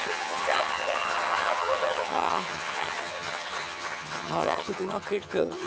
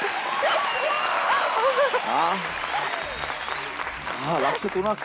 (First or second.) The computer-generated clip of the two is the first